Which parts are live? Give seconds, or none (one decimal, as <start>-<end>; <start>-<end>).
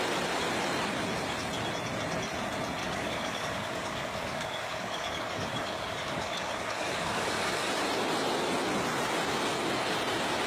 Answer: 0.0-2.8; 7.7-10.5